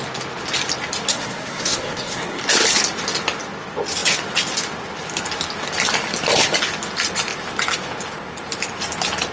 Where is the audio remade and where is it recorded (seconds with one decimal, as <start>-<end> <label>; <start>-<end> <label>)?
0.0-1.1 recorded; 1.1-2.4 remade; 2.4-9.3 recorded